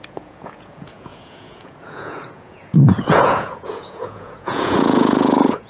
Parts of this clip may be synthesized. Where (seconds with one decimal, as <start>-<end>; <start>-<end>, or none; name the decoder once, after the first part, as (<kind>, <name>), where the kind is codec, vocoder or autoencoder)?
0.0-5.7 (vocoder, Vocos)